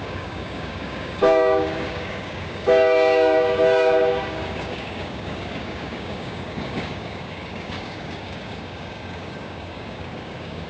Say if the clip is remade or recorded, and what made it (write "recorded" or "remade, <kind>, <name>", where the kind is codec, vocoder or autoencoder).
remade, codec, DAC